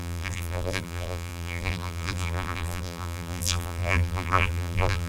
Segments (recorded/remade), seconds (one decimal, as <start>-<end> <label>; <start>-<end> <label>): 0.0-5.1 remade